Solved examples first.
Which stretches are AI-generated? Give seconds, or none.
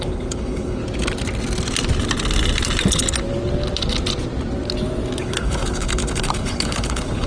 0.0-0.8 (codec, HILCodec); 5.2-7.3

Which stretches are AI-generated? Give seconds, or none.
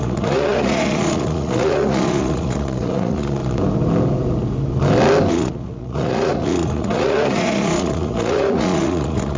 0.0-3.4 (vocoder, Vocos); 5.3-9.4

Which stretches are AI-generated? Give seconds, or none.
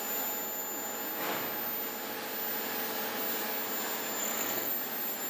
4.2-4.7 (codec, SNAC)